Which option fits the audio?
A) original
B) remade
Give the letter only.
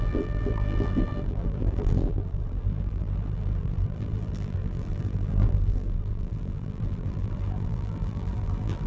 B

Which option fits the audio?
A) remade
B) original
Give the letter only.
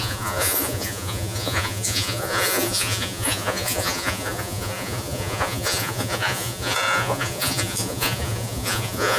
A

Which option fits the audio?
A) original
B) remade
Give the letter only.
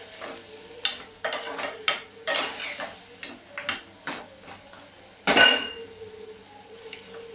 A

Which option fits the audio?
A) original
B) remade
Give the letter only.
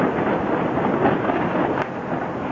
A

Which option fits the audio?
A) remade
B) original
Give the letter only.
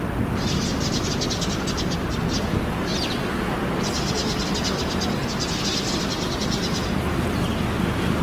B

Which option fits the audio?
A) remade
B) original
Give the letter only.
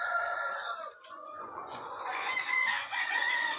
A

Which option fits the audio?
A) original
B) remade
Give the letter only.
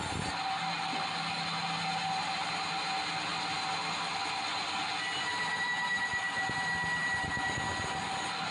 A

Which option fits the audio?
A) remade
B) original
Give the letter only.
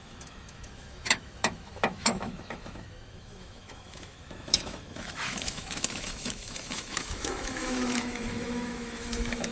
A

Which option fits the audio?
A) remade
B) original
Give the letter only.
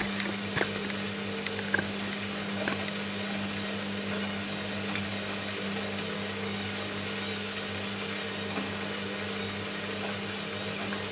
B